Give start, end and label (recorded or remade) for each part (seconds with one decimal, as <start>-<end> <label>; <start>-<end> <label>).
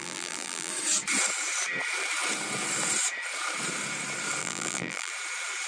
0.0-0.7 remade; 0.7-4.4 recorded; 4.4-5.1 remade; 5.1-5.7 recorded